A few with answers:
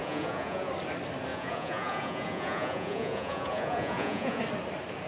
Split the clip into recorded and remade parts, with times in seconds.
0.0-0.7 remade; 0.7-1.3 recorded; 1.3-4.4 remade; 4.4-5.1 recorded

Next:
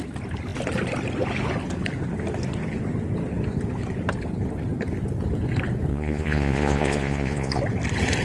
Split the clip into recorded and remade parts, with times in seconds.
0.0-5.9 recorded; 5.9-7.6 remade; 7.6-8.2 recorded

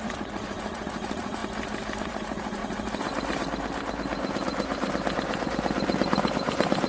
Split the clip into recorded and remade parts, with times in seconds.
0.0-1.4 remade; 1.4-2.0 recorded; 2.0-2.6 remade; 2.6-6.9 recorded

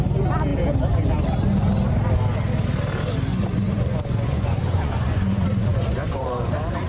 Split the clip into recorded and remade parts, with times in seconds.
0.0-3.3 recorded; 3.3-6.5 remade; 6.5-6.9 recorded